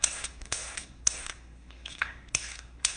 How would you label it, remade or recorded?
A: remade